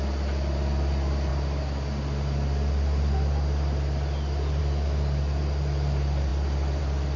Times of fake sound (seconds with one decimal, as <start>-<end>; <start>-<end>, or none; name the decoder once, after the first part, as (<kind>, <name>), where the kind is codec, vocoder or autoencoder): none